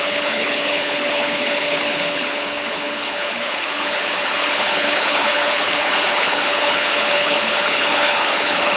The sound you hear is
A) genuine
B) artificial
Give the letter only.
B